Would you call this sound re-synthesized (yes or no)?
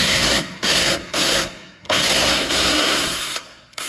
yes